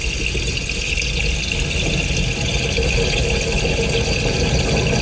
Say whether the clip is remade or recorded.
recorded